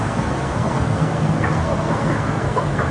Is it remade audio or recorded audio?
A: remade